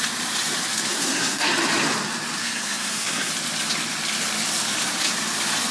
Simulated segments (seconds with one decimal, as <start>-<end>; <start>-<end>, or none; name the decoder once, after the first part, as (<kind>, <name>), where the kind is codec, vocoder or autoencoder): 0.9-1.5 (codec, SNAC); 2.4-3.3